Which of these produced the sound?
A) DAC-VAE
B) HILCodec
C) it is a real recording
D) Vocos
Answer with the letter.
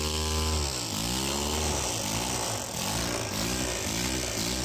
C